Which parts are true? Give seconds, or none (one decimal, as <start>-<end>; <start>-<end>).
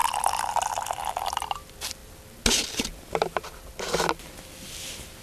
0.0-5.2